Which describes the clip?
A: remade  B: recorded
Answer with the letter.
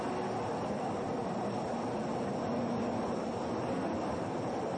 B